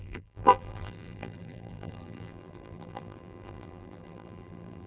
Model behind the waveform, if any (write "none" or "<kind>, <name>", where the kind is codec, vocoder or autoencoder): vocoder, BigVGAN v2